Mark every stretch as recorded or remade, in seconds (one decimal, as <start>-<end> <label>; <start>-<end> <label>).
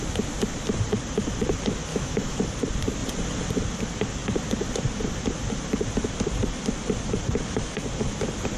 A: 0.0-1.9 recorded; 1.9-2.4 remade; 2.4-8.6 recorded